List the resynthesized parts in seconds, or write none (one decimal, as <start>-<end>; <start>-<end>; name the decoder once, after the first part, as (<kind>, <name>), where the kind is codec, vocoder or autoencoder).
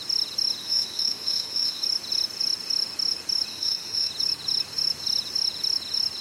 0.6-1.8 (autoencoder, DAC-VAE); 3.5-4.1